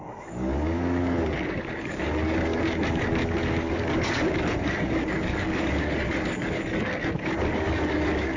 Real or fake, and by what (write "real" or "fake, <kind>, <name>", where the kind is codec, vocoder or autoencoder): fake, codec, DAC